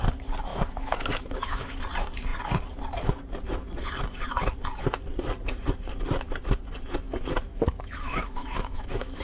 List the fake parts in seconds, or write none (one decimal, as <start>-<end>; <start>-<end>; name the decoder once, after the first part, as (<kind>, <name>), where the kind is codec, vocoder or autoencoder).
0.5-1.8 (autoencoder, DAC-VAE); 7.5-9.2